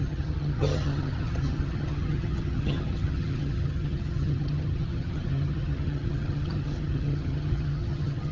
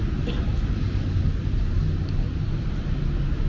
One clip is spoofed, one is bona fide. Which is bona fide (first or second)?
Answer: second